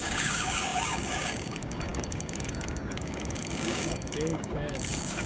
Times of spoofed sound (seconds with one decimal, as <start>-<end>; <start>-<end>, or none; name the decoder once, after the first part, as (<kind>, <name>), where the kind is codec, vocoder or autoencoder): 0.0-5.3 (codec, DAC)